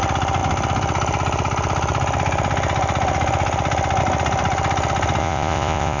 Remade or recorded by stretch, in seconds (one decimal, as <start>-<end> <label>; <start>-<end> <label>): 0.0-5.2 recorded; 5.2-6.0 remade